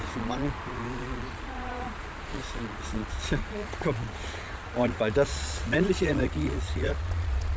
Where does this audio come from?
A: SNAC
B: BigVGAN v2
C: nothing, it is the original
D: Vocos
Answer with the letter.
D